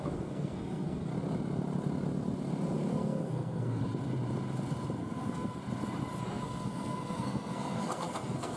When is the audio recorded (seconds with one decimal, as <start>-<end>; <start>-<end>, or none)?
1.1-2.9; 3.8-5.0; 5.6-6.2